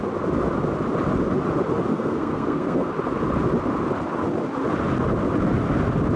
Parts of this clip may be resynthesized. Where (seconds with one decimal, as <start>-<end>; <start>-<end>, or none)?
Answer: 1.9-2.9